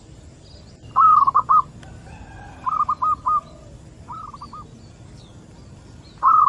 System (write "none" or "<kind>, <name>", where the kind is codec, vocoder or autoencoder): none